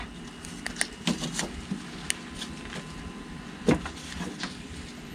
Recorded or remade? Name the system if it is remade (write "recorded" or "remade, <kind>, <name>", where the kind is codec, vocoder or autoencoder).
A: recorded